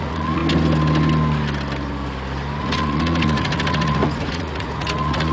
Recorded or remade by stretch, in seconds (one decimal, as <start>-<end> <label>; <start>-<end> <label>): 0.0-0.4 remade; 0.4-2.6 recorded; 2.6-5.3 remade